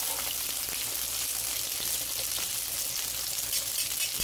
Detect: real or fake real